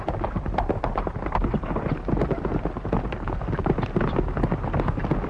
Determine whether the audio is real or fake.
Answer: real